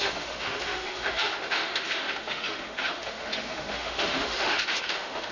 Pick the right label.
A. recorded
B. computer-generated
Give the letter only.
B